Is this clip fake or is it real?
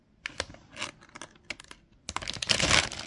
real